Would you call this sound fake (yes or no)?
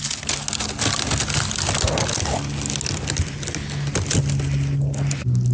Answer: no